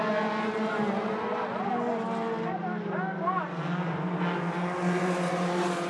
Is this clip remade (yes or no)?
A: no